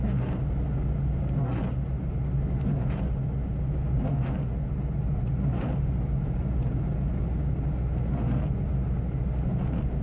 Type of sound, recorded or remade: recorded